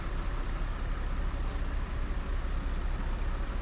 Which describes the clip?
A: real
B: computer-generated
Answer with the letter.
B